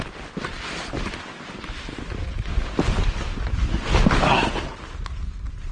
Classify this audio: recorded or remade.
recorded